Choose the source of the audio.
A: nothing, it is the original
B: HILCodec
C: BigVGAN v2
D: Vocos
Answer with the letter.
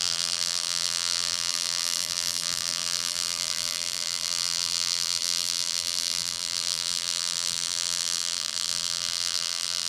C